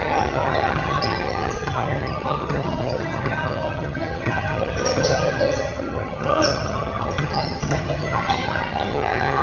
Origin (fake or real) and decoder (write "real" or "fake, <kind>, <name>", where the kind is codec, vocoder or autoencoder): fake, vocoder, HiFi-GAN